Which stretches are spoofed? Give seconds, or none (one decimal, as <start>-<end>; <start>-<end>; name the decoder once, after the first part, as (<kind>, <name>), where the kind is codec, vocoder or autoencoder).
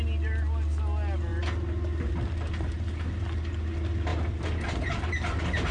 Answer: 4.1-5.1 (vocoder, BigVGAN v2)